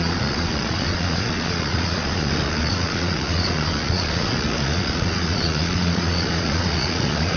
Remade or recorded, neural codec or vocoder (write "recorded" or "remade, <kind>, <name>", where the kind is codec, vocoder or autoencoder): remade, vocoder, Vocos